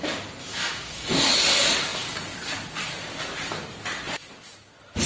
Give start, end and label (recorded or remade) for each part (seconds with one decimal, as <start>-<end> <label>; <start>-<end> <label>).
0.0-0.4 recorded; 0.4-1.1 remade; 1.1-5.1 recorded